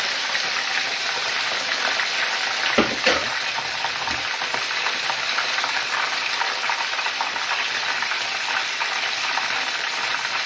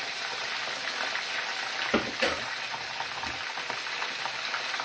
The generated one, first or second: first